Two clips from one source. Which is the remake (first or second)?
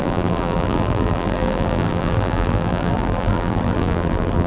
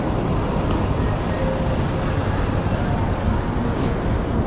first